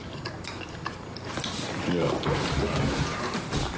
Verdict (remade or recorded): remade